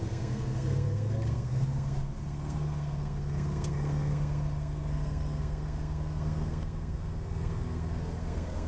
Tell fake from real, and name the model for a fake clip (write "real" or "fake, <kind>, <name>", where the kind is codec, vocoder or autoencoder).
fake, codec, SNAC